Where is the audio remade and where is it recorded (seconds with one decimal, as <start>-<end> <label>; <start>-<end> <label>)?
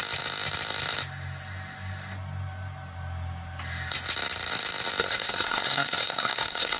0.0-5.0 recorded; 5.0-6.8 remade